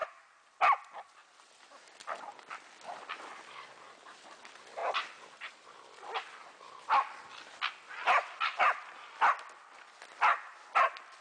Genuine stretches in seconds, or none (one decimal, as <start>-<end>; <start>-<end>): 0.0-11.2